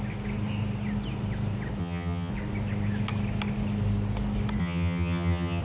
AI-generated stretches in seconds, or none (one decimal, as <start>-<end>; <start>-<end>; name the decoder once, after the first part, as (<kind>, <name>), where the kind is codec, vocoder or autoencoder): 1.8-2.3 (vocoder, HiFi-GAN); 4.6-5.6